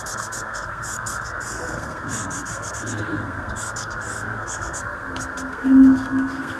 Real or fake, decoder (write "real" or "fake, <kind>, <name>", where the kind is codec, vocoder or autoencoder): fake, codec, SNAC